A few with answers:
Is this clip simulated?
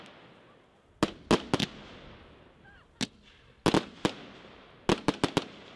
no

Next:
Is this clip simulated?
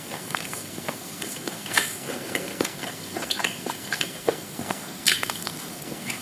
yes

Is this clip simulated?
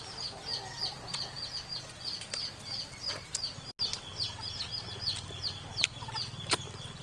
no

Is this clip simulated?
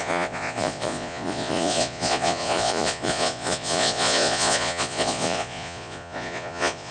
yes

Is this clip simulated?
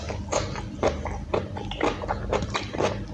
no